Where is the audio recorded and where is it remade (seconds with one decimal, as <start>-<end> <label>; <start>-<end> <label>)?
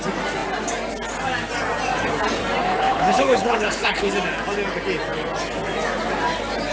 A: 0.0-2.7 recorded; 2.7-4.1 remade; 4.1-6.7 recorded